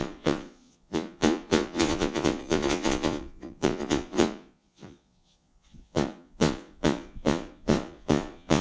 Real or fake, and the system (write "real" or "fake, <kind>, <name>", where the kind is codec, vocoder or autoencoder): fake, vocoder, Vocos